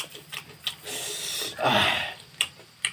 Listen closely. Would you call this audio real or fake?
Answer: fake